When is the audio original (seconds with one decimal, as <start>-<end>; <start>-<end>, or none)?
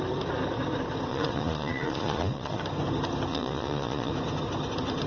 0.0-1.1; 2.6-3.3; 4.1-5.1